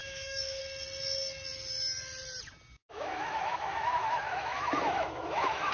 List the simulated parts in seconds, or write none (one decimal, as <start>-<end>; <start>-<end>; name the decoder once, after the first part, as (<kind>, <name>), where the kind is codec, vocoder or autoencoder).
0.0-0.6 (autoencoder, DAC-VAE); 2.8-5.7